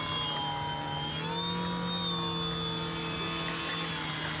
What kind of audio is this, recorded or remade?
recorded